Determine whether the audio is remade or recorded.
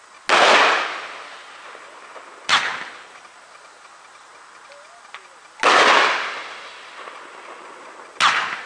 recorded